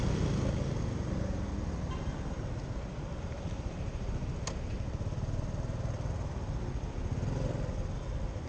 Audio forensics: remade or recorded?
recorded